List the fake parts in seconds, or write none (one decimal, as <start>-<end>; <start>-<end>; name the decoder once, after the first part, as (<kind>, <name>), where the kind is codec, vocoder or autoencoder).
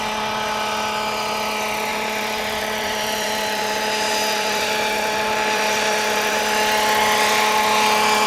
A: 1.9-6.4 (vocoder, BigVGAN v2)